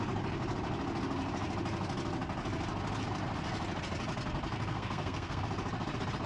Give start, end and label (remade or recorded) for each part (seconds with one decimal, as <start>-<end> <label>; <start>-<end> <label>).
0.0-4.5 recorded; 4.5-5.4 remade; 5.4-6.3 recorded